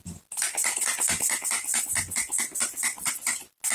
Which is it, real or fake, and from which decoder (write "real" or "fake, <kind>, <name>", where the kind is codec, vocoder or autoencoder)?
real